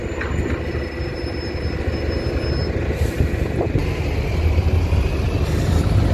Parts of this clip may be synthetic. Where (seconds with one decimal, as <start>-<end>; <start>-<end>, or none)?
none